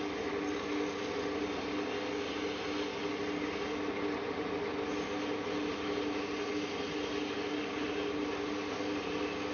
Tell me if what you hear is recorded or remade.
recorded